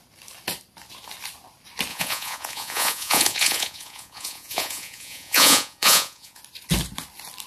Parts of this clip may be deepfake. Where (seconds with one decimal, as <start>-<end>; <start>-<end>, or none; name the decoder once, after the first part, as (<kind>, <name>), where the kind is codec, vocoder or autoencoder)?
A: 1.9-6.4 (vocoder, Vocos)